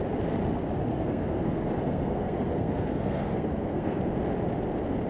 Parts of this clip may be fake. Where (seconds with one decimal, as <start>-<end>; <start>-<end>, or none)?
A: 0.9-4.0